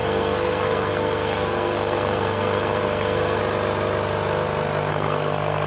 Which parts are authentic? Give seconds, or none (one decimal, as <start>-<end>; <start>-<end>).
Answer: 3.4-4.9

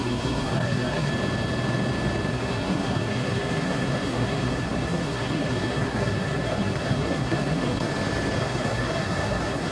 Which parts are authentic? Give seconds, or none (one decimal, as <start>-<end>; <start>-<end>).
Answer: 1.1-2.3; 7.9-8.4

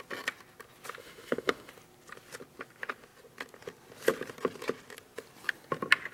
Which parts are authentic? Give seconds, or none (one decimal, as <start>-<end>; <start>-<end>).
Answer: 0.0-1.0; 1.7-6.1

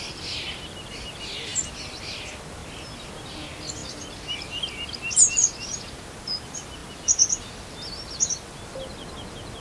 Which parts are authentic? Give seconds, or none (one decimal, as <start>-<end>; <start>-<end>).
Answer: 0.0-9.6